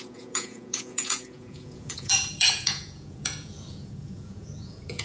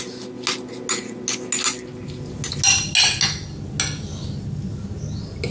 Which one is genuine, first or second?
second